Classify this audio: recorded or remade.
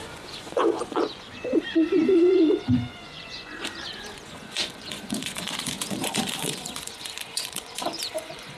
remade